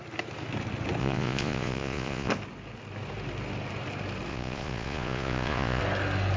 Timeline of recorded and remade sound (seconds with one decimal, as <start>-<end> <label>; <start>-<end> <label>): 0.0-1.0 recorded; 1.0-2.3 remade; 2.3-4.3 recorded; 4.3-5.8 remade; 5.8-6.4 recorded